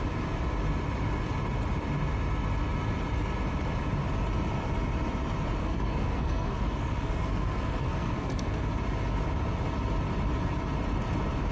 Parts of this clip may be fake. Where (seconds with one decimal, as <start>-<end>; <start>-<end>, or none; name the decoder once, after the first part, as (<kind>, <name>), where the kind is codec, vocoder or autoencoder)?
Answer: 5.6-8.7 (codec, SNAC)